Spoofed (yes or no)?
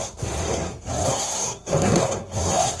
yes